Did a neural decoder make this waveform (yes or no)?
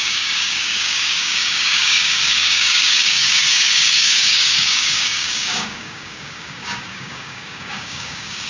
yes